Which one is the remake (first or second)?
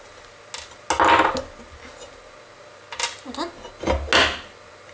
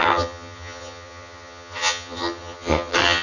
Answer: second